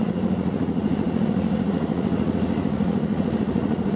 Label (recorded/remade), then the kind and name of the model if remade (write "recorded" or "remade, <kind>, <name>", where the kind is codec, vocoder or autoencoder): remade, vocoder, Vocos